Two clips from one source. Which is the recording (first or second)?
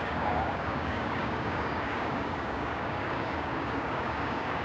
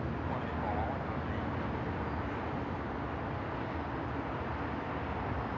second